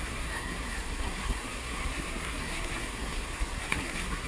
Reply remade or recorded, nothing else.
remade